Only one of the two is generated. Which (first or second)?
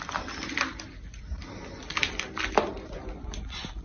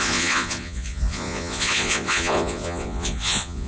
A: second